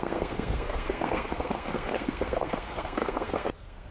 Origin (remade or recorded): remade